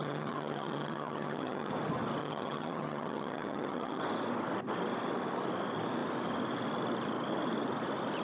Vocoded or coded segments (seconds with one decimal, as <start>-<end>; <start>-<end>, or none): 0.0-1.7; 2.2-4.0